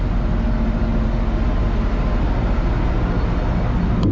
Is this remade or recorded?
recorded